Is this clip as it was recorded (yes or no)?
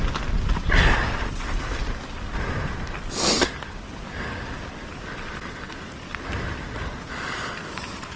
yes